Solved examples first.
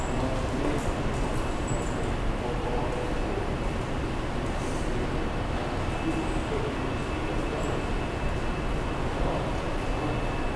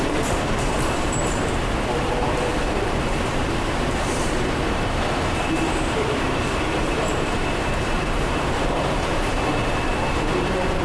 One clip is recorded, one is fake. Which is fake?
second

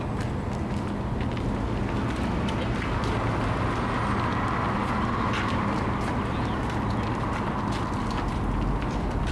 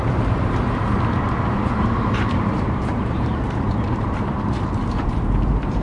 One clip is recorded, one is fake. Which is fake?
second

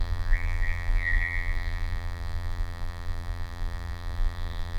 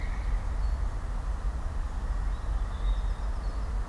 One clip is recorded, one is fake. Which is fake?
first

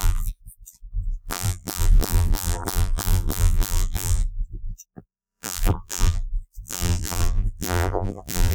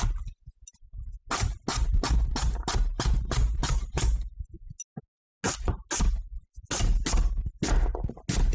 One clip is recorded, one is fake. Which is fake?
first